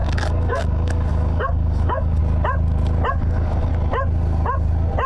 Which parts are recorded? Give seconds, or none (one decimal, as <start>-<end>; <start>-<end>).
2.2-3.1; 3.7-5.1